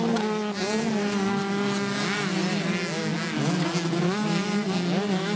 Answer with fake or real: real